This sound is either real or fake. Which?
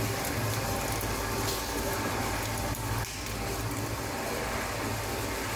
real